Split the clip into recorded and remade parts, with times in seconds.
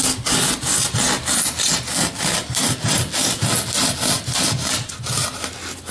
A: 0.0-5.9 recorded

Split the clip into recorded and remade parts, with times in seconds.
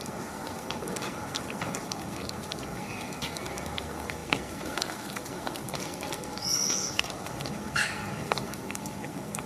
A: 0.0-9.5 remade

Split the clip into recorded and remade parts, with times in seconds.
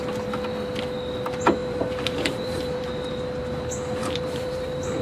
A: 0.0-1.6 recorded; 1.6-3.1 remade; 3.1-4.0 recorded; 4.0-5.0 remade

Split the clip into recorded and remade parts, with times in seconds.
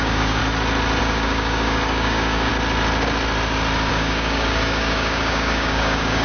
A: 0.0-0.4 remade; 0.4-1.0 recorded; 1.0-2.5 remade; 2.5-3.9 recorded; 3.9-6.2 remade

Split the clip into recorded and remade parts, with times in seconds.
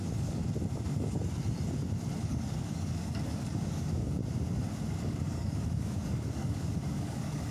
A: 0.0-0.4 remade; 0.4-2.2 recorded; 2.2-4.2 remade; 4.2-4.9 recorded; 4.9-7.5 remade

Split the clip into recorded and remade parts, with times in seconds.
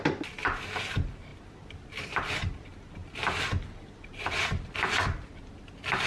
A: 0.0-1.3 recorded; 1.3-2.3 remade; 2.3-6.1 recorded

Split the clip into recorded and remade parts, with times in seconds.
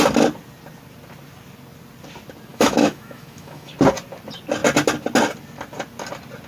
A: 0.0-2.5 recorded; 2.5-3.7 remade; 3.7-6.5 recorded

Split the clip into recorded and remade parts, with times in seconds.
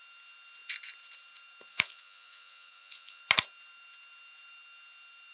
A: 0.0-1.7 recorded; 1.7-3.2 remade; 3.2-5.3 recorded